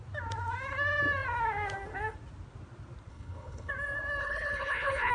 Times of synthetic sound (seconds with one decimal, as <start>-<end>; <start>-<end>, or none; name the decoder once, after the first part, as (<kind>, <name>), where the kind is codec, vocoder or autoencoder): 3.1-3.7 (codec, HILCodec); 4.2-5.1